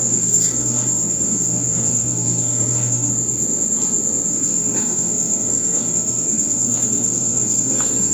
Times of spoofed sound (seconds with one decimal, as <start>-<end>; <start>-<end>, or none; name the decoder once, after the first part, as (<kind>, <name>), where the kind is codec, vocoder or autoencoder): 0.0-3.1 (codec, SNAC); 4.3-8.1